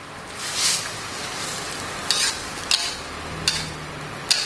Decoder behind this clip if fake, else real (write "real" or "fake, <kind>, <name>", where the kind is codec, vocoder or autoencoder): real